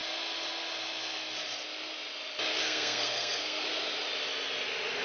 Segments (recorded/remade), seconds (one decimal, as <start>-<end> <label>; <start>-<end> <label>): 0.0-2.5 recorded; 2.5-3.6 remade; 3.6-5.0 recorded